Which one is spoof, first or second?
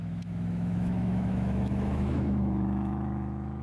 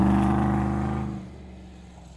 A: first